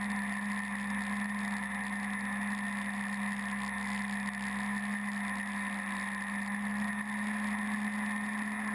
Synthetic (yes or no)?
no